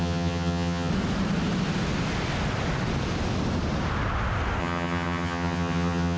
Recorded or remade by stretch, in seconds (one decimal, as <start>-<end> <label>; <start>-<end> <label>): 0.0-0.9 remade; 0.9-4.6 recorded; 4.6-6.2 remade